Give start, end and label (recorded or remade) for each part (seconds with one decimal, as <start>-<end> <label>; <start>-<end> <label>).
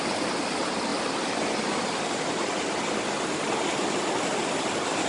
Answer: 0.0-5.1 recorded